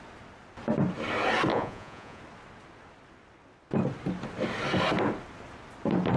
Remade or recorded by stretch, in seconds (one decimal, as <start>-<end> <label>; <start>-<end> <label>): 0.0-1.5 recorded; 1.5-2.2 remade; 2.2-6.2 recorded